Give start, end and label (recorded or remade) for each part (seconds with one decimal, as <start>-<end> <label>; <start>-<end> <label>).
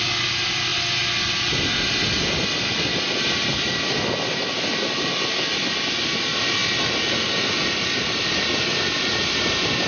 0.0-9.9 recorded